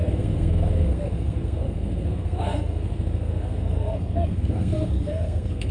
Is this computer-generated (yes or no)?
yes